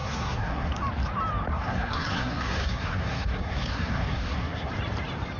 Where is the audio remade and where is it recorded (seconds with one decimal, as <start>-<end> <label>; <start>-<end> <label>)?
0.0-0.7 remade; 0.7-1.5 recorded; 1.5-4.7 remade; 4.7-5.4 recorded